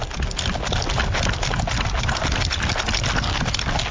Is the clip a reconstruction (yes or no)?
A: no